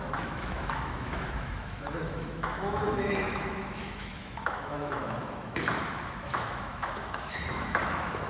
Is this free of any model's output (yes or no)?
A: no